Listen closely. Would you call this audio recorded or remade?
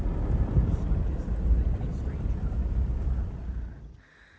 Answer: recorded